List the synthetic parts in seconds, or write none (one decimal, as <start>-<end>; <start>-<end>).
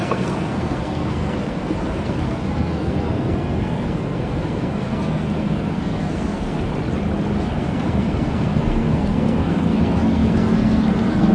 0.0-6.7; 7.4-11.3